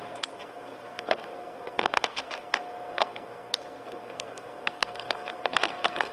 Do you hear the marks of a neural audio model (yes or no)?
yes